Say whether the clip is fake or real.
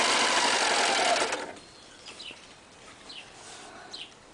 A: real